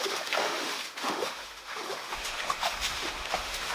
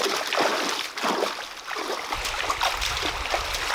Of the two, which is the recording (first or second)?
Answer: second